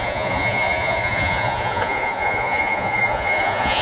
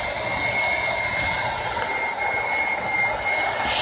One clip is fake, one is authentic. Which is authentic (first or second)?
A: second